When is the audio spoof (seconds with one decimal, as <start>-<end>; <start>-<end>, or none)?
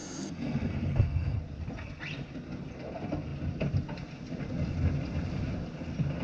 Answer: 0.0-1.4